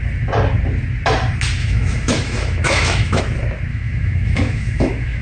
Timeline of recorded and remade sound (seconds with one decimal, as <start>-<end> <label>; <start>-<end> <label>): 0.0-1.6 recorded; 1.6-3.2 remade; 3.2-3.7 recorded; 3.7-5.2 remade